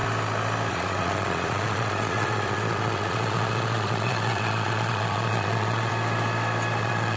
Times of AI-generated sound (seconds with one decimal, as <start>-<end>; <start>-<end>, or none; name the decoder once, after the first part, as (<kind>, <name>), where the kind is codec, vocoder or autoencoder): 0.7-5.9 (vocoder, Vocos); 6.8-7.2